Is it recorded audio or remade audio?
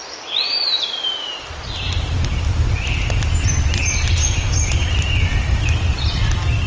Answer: recorded